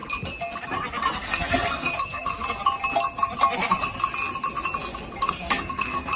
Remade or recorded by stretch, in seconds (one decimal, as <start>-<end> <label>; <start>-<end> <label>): 0.0-1.1 recorded; 1.1-2.3 remade; 2.3-5.2 recorded; 5.2-6.2 remade